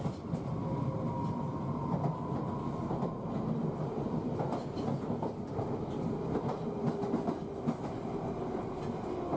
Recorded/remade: recorded